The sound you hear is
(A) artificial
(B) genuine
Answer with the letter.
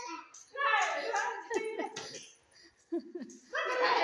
B